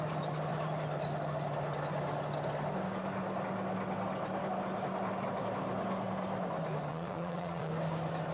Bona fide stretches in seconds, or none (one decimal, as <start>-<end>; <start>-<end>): 0.0-6.9; 7.7-8.3